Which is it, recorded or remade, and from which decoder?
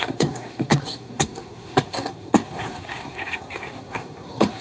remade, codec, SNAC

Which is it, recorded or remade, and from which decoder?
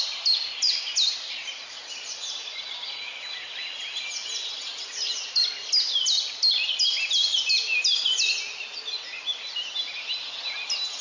recorded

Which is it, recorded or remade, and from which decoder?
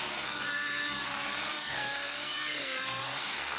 remade, codec, SNAC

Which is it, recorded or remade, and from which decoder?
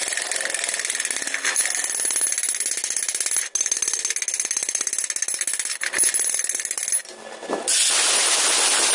recorded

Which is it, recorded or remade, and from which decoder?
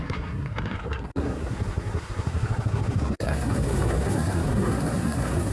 remade, codec, SNAC